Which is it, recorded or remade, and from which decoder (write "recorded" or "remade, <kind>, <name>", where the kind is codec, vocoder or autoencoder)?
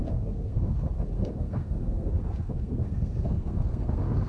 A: remade, codec, SNAC